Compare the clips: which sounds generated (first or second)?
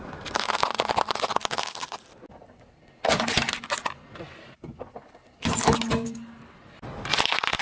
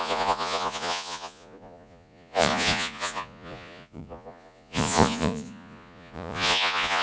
second